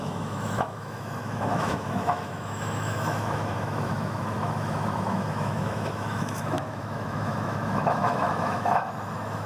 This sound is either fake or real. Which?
fake